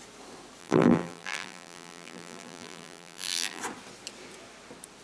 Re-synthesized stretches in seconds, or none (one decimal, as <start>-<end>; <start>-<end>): 0.6-3.6